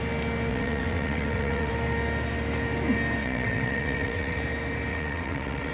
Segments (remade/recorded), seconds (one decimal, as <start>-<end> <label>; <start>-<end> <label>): 0.0-0.5 recorded; 0.5-1.7 remade; 1.7-3.2 recorded; 3.2-4.4 remade; 4.4-4.9 recorded; 4.9-5.7 remade